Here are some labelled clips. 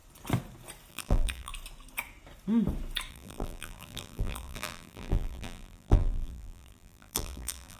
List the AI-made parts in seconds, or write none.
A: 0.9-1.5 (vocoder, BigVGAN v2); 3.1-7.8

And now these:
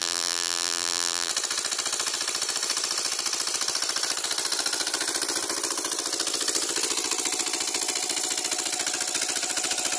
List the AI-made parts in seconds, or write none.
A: 0.0-1.3 (vocoder, BigVGAN v2)